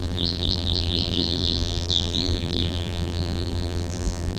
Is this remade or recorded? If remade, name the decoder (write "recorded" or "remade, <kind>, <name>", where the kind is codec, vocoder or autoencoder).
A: remade, vocoder, BigVGAN v2